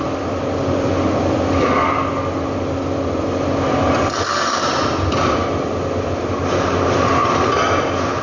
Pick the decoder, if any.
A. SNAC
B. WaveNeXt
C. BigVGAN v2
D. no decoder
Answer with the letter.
D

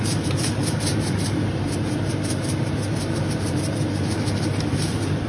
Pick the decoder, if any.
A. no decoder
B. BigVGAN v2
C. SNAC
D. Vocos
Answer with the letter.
B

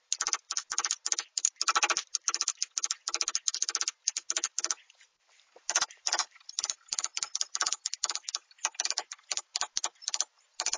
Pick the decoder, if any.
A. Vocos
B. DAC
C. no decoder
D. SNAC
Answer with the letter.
C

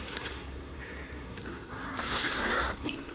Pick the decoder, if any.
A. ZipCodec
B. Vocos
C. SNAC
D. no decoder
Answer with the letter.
C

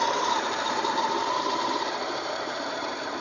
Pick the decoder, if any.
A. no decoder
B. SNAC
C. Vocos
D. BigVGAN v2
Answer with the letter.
D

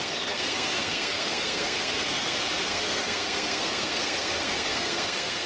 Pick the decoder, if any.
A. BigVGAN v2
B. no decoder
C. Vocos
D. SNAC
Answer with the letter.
D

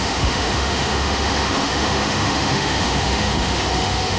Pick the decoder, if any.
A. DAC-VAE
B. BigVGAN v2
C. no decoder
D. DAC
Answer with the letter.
A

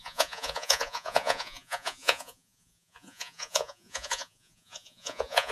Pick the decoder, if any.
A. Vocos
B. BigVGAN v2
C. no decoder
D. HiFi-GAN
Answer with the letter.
A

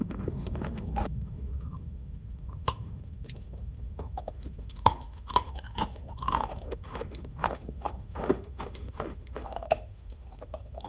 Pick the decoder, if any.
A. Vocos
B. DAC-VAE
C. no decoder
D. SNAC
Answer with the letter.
B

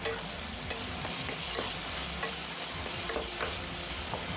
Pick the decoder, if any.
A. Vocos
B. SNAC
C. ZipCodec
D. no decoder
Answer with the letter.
D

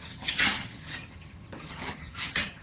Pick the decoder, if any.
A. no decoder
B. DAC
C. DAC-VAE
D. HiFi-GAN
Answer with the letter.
D